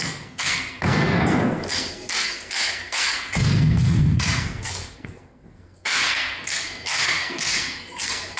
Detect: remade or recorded remade